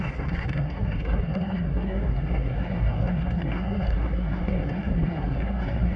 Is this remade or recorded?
remade